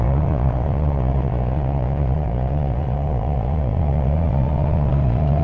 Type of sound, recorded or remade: remade